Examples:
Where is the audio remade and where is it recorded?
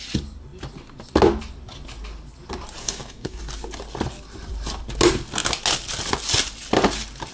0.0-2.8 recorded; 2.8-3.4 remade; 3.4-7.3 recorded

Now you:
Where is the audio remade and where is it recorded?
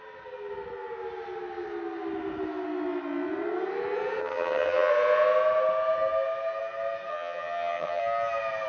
0.0-4.2 recorded; 4.2-4.9 remade; 4.9-7.1 recorded; 7.1-8.0 remade; 8.0-8.7 recorded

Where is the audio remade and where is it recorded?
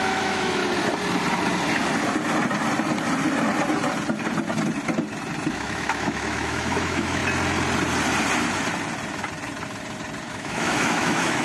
0.0-0.6 remade; 0.6-5.5 recorded; 5.5-7.2 remade; 7.2-10.3 recorded; 10.3-11.4 remade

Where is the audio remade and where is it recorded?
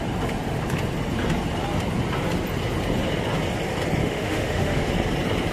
0.0-4.0 recorded; 4.0-4.9 remade; 4.9-5.5 recorded